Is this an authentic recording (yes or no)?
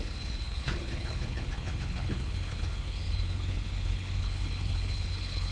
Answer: no